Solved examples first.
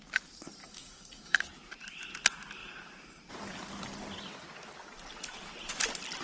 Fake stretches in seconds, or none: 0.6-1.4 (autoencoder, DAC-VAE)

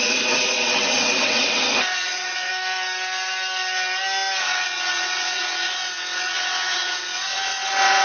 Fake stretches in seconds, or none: 0.0-2.5 (vocoder, WaveNeXt); 4.4-8.0

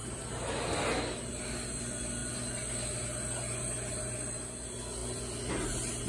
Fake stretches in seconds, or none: 5.0-5.5 (vocoder, BigVGAN v2)

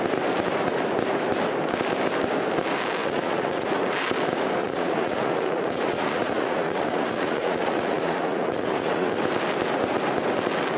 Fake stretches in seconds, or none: 3.0-3.8 (vocoder, Vocos); 4.6-9.2

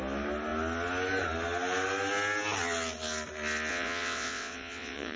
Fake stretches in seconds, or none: 3.7-5.2 (vocoder, WaveNeXt)